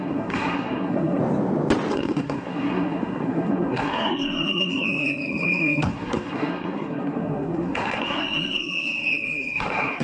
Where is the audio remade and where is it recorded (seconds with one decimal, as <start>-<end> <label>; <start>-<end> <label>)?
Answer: 0.0-1.2 remade; 1.2-1.9 recorded; 1.9-10.0 remade